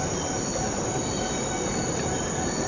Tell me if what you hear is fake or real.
real